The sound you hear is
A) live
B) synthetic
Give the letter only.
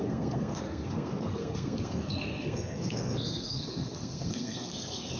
B